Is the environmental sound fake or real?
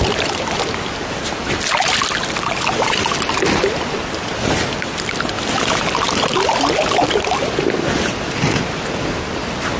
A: real